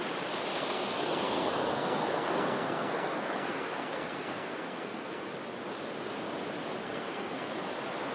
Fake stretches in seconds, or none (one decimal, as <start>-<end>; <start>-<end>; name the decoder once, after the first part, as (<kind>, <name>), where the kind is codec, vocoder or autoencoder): 0.5-5.3 (codec, SNAC); 6.8-7.6

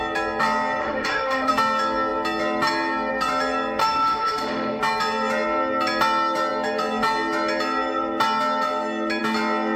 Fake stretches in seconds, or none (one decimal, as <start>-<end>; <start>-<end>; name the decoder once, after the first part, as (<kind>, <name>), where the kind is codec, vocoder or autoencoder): 0.8-1.5 (autoencoder, DAC-VAE); 3.8-4.8